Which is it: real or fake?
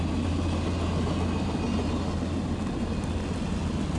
real